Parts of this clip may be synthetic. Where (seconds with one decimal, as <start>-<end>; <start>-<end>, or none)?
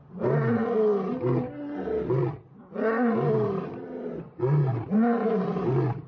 none